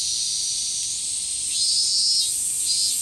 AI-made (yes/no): no